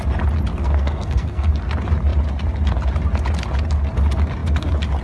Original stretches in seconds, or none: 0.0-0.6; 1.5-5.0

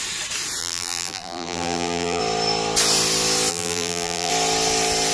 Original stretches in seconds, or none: 0.0-0.6; 2.2-3.5; 4.3-5.1

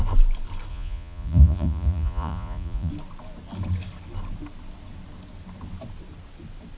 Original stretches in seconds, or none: 0.0-0.7; 2.9-6.8

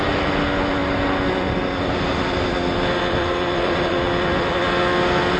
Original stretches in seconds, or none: 0.0-5.4